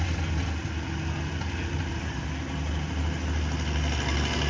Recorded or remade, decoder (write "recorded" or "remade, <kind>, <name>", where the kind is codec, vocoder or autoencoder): recorded